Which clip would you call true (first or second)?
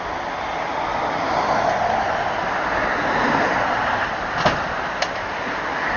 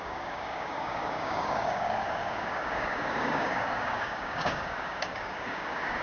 first